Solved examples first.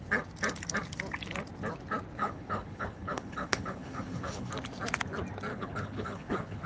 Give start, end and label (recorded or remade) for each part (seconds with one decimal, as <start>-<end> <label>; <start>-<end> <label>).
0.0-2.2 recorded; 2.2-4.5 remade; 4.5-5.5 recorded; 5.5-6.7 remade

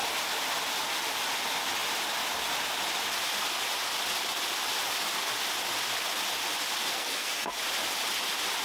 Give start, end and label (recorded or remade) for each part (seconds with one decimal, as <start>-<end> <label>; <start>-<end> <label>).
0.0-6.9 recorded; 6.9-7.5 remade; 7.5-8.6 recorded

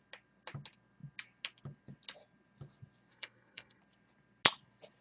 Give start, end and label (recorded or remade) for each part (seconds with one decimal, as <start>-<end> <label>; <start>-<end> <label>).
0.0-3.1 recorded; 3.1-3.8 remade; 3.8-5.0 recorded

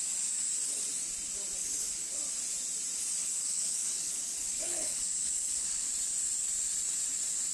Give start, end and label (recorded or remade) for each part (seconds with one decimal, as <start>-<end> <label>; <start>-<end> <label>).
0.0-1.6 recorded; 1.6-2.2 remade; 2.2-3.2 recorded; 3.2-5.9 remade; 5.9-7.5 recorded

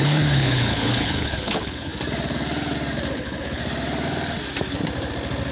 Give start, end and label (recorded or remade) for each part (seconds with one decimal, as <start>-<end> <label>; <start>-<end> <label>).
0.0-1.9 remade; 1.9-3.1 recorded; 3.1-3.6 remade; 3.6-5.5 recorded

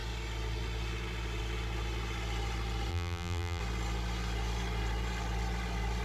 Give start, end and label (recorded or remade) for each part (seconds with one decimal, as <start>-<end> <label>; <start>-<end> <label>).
0.0-2.9 recorded; 2.9-3.6 remade; 3.6-6.0 recorded

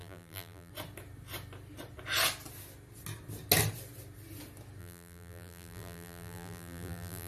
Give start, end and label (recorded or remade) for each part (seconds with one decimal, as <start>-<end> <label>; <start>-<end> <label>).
0.0-0.7 remade; 0.7-4.8 recorded; 4.8-7.3 remade